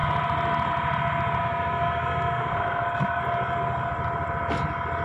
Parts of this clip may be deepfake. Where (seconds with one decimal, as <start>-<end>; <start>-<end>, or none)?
1.4-3.2

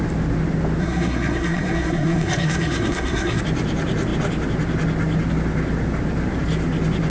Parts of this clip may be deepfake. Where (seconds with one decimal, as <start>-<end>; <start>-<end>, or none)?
0.8-3.4

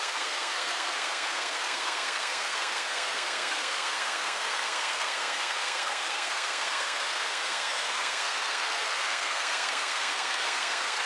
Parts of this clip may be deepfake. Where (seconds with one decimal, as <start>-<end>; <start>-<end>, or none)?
0.0-11.1